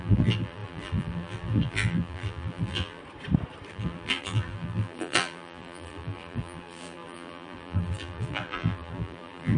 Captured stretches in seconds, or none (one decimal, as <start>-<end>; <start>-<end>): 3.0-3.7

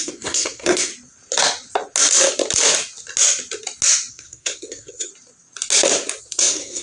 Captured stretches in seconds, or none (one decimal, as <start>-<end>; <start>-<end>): 0.9-4.1; 5.1-6.2

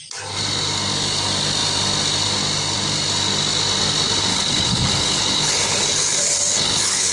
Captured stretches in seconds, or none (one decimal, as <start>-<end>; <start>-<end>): 0.0-4.3

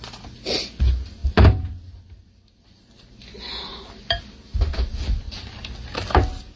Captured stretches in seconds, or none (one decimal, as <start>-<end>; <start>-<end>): 0.0-6.6